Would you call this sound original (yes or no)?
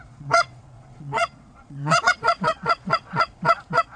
no